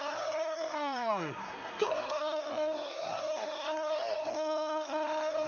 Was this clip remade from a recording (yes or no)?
yes